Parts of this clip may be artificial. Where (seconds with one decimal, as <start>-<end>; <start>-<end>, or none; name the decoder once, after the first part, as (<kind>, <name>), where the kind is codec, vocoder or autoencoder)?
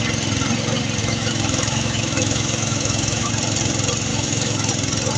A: 1.0-3.3 (autoencoder, DAC-VAE); 4.1-4.7